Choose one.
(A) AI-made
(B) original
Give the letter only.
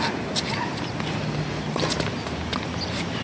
B